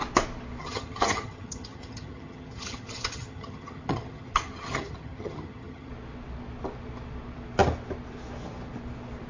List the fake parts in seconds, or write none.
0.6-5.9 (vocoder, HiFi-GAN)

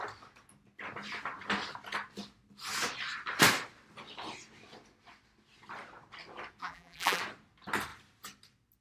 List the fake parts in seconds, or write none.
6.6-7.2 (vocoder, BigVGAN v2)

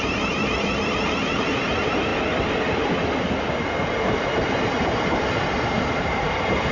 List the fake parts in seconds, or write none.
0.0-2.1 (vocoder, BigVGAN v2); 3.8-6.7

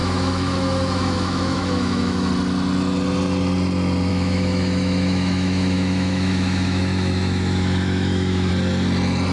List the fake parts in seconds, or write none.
0.0-2.3 (autoencoder, DAC-VAE); 4.1-8.5

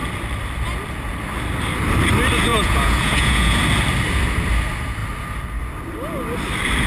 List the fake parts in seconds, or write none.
2.5-3.6 (vocoder, Vocos)

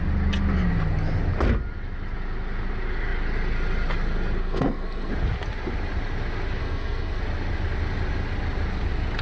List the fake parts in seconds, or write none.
4.4-5.1 (codec, SNAC); 6.6-7.2

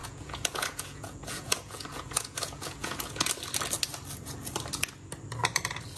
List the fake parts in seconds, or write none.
0.0-3.3 (vocoder, Vocos)